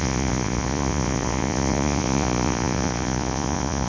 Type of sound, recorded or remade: remade